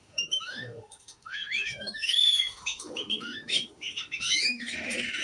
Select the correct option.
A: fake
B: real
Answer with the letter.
A